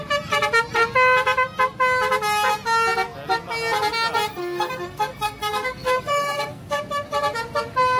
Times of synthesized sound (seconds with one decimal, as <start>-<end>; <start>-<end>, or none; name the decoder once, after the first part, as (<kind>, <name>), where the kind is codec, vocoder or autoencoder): 4.4-6.8 (codec, SNAC)